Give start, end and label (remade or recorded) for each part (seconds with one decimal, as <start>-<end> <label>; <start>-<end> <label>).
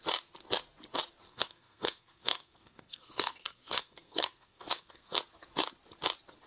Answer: 0.0-1.3 recorded; 1.3-5.2 remade; 5.2-6.5 recorded